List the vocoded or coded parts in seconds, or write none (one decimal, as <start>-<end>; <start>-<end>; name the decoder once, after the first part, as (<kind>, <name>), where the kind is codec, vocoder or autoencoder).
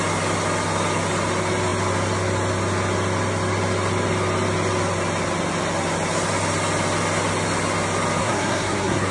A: 8.2-9.1 (codec, SNAC)